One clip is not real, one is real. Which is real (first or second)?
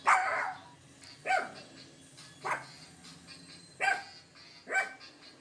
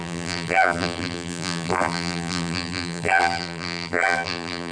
first